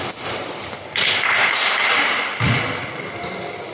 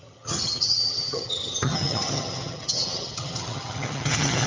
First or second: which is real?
first